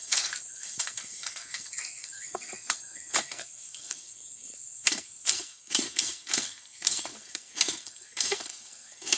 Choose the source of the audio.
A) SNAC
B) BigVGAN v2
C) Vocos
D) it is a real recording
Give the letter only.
A